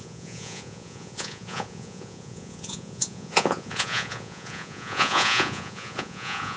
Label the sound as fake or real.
fake